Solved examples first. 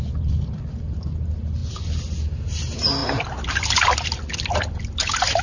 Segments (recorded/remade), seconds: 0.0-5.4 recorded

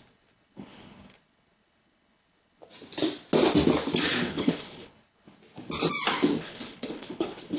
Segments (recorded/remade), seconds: 0.0-2.6 remade; 2.6-4.2 recorded; 4.2-5.4 remade; 5.4-6.4 recorded; 6.4-7.6 remade